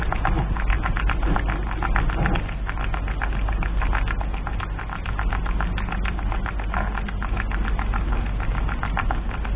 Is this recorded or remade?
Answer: recorded